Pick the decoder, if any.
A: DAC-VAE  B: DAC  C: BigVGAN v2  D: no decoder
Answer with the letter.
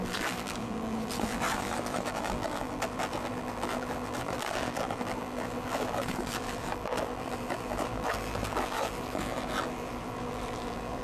C